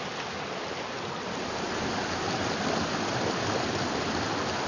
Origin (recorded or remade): recorded